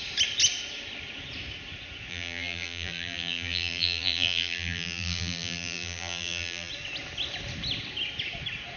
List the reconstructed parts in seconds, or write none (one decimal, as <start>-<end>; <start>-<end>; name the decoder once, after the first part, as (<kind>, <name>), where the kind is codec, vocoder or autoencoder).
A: 2.1-6.7 (vocoder, BigVGAN v2)